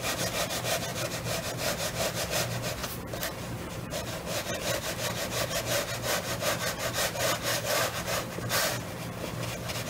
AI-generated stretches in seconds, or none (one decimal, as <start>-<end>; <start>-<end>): 7.5-8.0